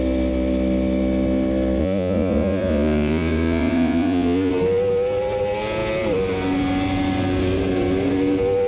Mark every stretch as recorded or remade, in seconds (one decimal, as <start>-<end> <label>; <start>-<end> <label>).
0.0-1.8 recorded; 1.8-4.5 remade; 4.5-8.7 recorded